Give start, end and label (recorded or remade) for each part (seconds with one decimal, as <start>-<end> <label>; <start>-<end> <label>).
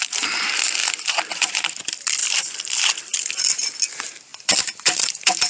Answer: 0.0-0.8 recorded; 0.8-1.7 remade; 1.7-2.2 recorded; 2.2-3.3 remade; 3.3-5.5 recorded